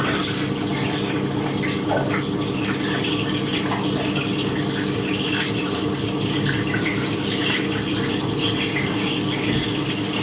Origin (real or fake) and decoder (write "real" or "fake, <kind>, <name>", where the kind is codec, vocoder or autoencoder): real